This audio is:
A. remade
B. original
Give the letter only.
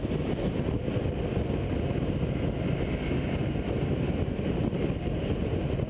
B